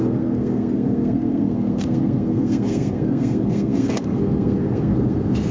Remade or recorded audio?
remade